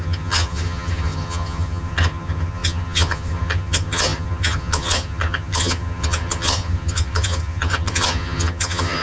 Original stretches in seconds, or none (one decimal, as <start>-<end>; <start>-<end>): none